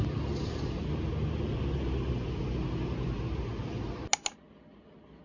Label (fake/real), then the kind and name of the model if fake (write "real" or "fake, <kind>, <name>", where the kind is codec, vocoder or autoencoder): real